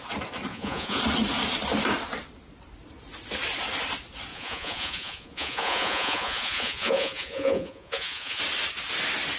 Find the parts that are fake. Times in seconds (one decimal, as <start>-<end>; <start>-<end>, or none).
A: 0.5-1.0; 4.3-8.4